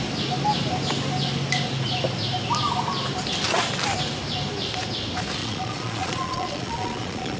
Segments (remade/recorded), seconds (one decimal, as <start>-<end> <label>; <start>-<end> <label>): 0.0-5.4 recorded; 5.4-7.4 remade